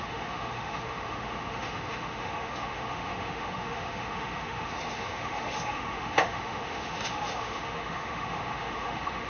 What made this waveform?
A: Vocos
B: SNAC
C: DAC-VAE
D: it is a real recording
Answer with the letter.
C